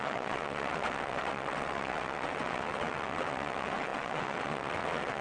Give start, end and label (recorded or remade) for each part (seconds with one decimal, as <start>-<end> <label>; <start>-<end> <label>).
0.0-5.2 remade